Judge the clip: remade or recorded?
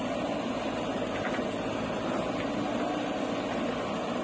recorded